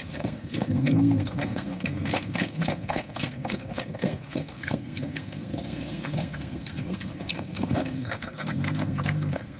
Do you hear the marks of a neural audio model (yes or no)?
yes